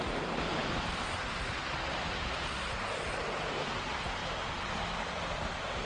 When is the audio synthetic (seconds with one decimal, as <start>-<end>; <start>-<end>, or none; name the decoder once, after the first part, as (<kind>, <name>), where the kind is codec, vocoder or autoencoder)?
none